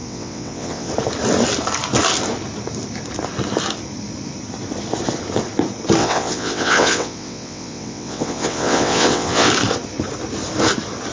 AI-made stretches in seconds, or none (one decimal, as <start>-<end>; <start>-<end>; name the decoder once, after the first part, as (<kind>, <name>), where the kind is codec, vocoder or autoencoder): 0.0-0.9 (vocoder, WaveNeXt); 6.0-9.5